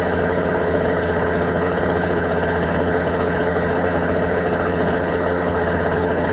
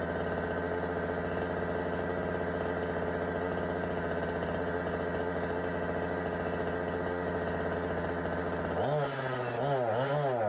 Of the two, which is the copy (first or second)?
first